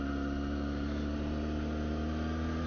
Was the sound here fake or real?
real